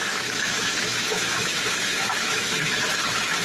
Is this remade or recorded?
remade